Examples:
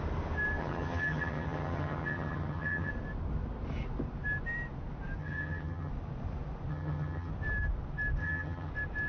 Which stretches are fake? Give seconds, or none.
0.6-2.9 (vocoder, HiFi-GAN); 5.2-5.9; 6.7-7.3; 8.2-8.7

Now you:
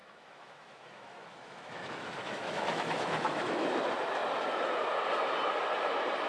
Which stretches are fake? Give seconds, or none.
0.0-3.8 (autoencoder, DAC-VAE)

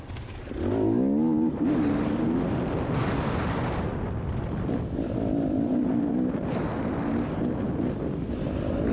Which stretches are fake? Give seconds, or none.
3.0-6.1 (vocoder, BigVGAN v2)

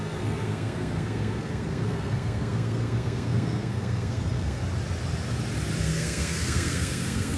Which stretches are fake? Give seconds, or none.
0.0-4.6 (codec, SNAC); 5.8-7.4

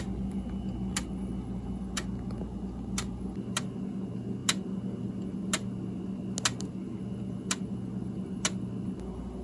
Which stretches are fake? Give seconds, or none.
none